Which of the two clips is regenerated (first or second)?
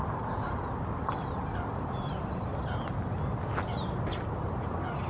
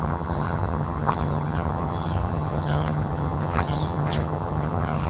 second